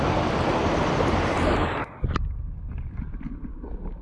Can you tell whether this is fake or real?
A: real